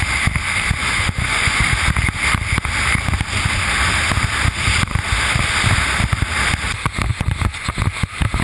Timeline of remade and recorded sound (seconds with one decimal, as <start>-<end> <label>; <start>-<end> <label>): 0.0-0.8 recorded; 0.8-1.6 remade; 1.6-7.1 recorded; 7.1-7.7 remade; 7.7-8.4 recorded